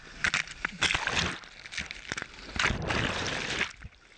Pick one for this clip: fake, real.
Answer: real